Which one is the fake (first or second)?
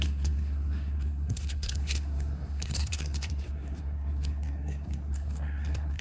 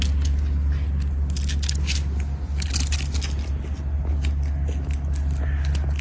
first